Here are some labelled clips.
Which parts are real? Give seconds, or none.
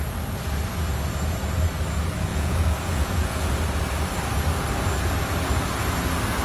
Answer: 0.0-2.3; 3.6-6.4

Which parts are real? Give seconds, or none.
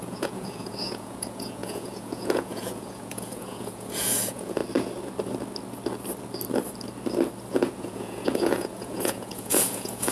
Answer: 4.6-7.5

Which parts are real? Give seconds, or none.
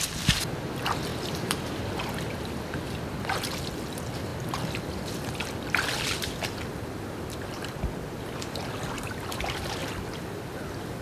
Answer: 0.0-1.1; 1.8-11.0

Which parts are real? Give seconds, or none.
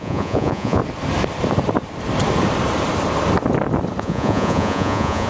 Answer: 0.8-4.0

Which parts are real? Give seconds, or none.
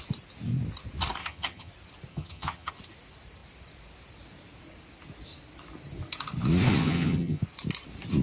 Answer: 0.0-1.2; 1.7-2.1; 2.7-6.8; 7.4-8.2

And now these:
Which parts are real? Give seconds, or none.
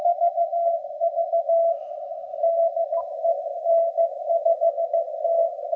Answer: 0.0-5.8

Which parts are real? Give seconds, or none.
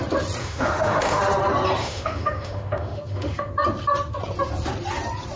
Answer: 0.0-0.4; 1.2-1.8; 3.5-5.4